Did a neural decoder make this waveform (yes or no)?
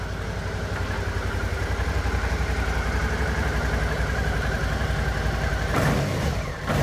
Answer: yes